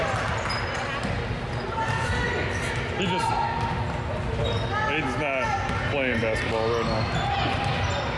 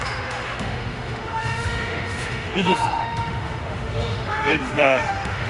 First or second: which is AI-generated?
second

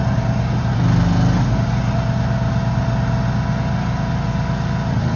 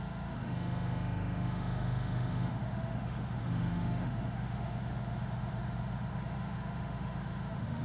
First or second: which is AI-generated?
second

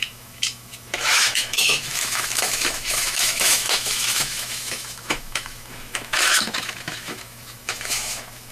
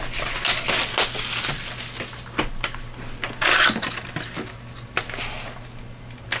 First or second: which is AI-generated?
first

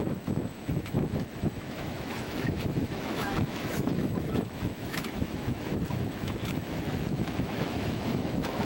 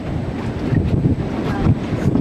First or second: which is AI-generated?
first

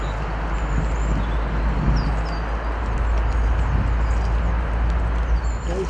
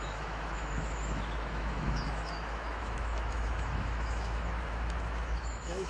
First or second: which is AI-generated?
second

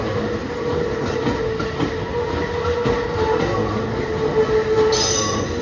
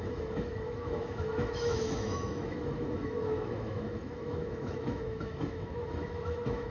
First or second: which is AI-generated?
second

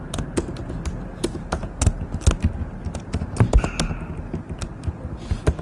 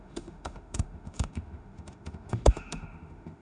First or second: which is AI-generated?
second